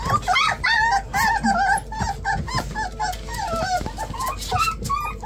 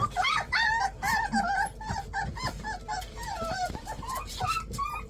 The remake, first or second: second